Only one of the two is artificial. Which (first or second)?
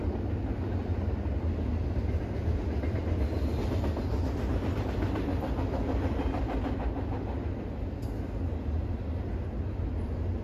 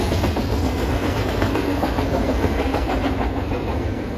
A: second